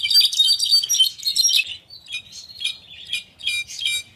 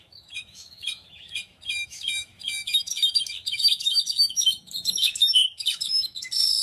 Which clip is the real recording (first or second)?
first